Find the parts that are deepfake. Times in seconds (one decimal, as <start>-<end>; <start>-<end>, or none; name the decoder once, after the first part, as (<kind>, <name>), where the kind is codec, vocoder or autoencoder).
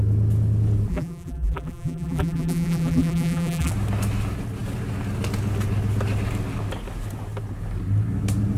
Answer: 0.9-3.7 (vocoder, BigVGAN v2)